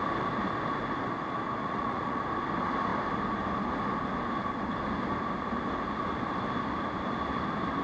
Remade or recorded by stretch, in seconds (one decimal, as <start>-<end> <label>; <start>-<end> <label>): 0.0-1.6 recorded; 1.6-2.2 remade; 2.2-7.8 recorded